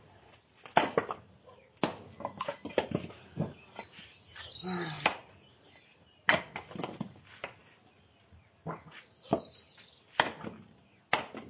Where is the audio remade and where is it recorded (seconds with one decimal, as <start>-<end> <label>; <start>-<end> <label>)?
0.0-11.5 recorded